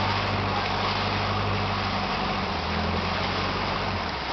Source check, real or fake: real